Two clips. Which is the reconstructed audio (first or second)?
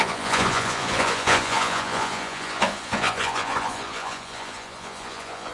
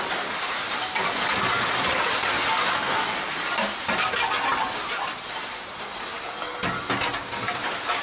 first